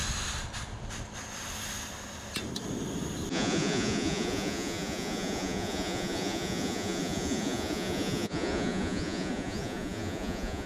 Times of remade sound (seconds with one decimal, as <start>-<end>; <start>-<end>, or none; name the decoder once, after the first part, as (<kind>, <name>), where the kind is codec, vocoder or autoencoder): 3.3-10.7 (vocoder, Vocos)